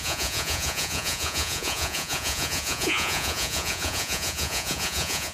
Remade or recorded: remade